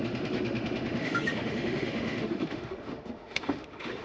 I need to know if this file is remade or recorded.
remade